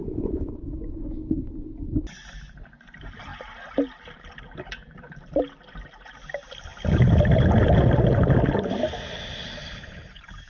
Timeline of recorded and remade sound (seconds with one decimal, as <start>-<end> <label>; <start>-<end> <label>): 0.0-0.5 remade; 0.5-10.5 recorded